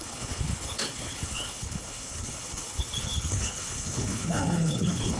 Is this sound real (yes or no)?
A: no